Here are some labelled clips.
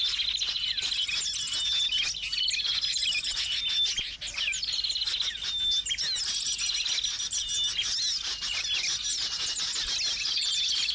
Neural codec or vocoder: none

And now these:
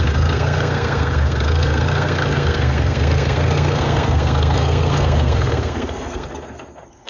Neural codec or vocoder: codec, SNAC